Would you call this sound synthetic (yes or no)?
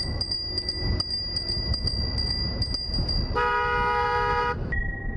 no